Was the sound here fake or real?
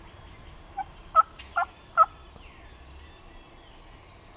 real